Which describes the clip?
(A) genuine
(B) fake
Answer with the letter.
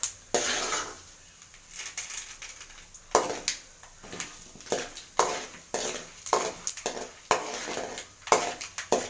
A